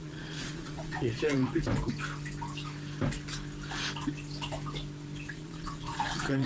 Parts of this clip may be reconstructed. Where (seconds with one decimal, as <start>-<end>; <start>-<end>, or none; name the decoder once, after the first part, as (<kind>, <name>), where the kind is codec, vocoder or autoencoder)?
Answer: 0.0-1.4 (vocoder, Vocos); 5.3-6.5